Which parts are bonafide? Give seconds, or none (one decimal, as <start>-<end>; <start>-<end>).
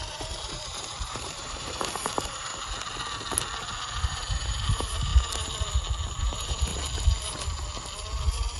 2.5-4.0; 5.1-6.0; 6.7-8.6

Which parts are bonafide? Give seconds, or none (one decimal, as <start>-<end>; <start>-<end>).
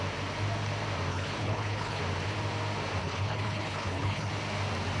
0.0-1.1; 2.0-3.0; 4.3-5.0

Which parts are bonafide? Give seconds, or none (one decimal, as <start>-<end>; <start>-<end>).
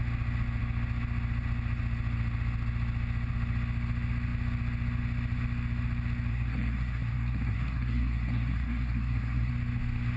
0.0-6.3; 9.5-10.2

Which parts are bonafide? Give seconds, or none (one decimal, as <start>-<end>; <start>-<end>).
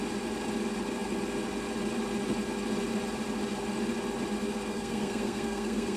0.0-4.7